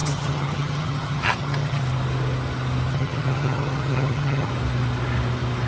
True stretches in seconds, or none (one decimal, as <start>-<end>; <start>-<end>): 1.8-2.9; 4.5-5.7